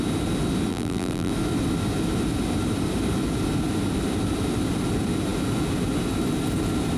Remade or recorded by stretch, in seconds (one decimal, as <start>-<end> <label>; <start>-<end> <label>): 0.0-0.7 recorded; 0.7-1.3 remade; 1.3-7.0 recorded